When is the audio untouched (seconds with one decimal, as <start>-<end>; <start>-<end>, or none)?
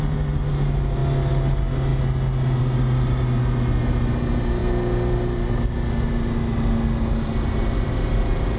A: 0.0-8.6